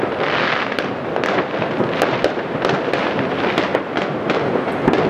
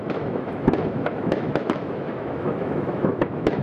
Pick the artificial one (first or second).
second